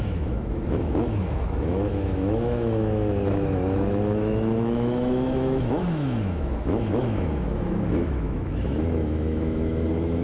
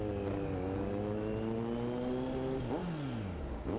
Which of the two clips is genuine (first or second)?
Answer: second